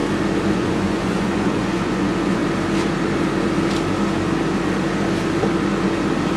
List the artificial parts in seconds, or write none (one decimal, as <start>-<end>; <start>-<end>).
0.5-2.4